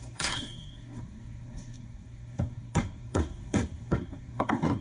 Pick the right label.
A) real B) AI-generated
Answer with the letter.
B